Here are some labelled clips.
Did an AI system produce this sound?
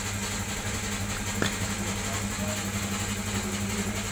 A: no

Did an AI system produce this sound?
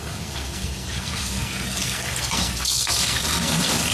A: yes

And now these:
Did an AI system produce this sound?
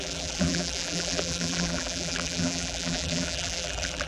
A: yes